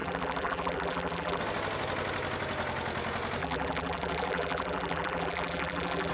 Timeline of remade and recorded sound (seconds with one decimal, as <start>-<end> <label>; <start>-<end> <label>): 0.0-1.4 remade; 1.4-3.4 recorded; 3.4-6.1 remade